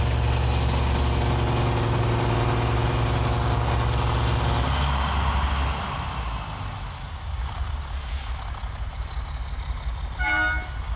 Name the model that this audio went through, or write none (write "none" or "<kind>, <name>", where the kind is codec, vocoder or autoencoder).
none